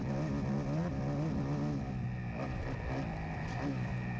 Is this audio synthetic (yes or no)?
no